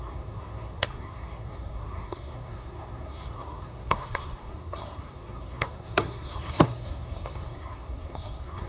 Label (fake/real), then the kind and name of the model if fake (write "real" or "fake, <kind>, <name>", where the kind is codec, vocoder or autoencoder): fake, codec, SNAC